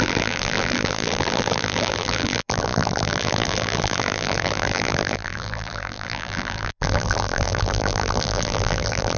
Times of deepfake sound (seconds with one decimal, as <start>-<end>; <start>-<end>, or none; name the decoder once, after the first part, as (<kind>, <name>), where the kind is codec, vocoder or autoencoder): 0.0-9.2 (vocoder, BigVGAN v2)